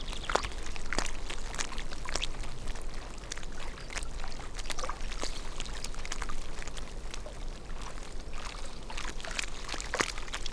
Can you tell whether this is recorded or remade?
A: recorded